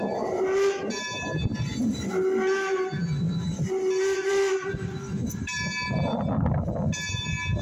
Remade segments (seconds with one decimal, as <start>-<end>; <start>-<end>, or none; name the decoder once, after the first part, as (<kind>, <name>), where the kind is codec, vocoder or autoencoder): none